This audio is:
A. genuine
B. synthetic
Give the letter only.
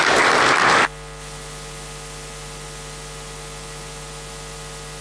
A